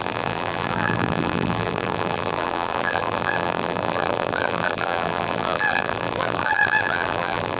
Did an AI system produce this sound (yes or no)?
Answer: yes